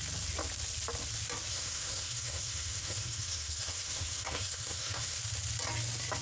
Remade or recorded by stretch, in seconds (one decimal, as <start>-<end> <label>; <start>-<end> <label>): 0.0-1.5 recorded; 1.5-5.2 remade; 5.2-6.2 recorded